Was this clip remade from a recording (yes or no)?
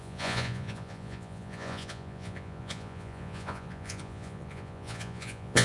yes